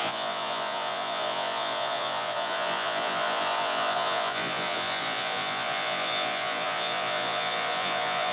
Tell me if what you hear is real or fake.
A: fake